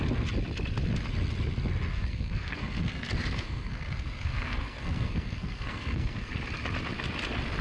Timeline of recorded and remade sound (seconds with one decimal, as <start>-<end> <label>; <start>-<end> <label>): 0.0-1.9 recorded; 1.9-6.3 remade; 6.3-7.6 recorded